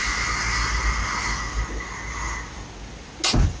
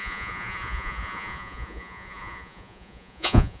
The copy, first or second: second